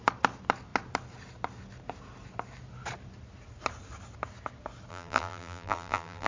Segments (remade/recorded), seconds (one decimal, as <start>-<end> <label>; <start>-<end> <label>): 0.0-4.9 recorded; 4.9-6.3 remade